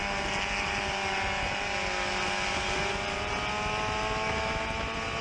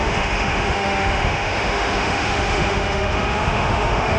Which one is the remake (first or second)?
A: second